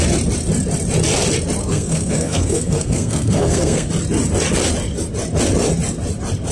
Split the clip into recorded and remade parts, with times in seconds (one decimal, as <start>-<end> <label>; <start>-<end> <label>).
0.0-1.6 recorded; 1.6-3.9 remade; 3.9-6.5 recorded